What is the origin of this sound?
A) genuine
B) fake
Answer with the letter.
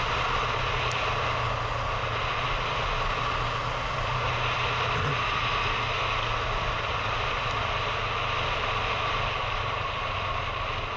A